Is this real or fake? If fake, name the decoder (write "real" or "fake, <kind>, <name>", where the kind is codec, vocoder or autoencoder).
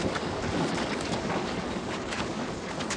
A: fake, codec, DAC